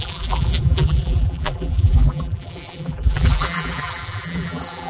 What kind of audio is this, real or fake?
fake